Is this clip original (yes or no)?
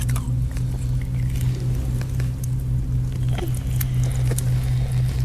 yes